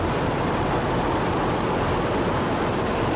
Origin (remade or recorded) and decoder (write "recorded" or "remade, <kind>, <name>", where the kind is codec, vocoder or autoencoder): recorded